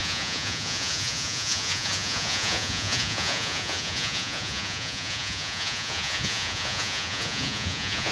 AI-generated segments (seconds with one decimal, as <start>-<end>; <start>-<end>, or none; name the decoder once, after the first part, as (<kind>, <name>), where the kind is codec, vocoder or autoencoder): 0.0-8.1 (vocoder, Vocos)